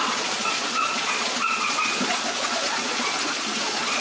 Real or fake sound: fake